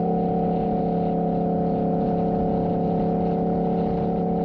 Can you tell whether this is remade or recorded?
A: recorded